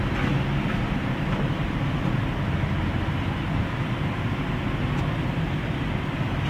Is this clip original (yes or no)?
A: yes